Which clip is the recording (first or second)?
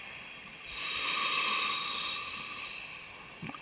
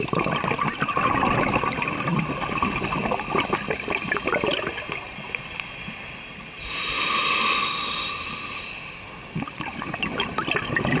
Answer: second